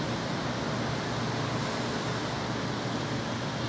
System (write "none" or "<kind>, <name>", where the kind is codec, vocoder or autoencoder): none